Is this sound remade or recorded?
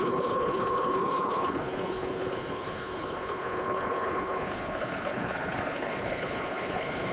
remade